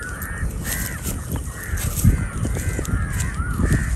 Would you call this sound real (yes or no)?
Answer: yes